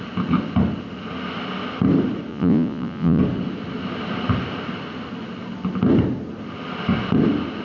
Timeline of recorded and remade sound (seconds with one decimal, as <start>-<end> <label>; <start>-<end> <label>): 0.0-2.3 recorded; 2.3-3.2 remade; 3.2-7.6 recorded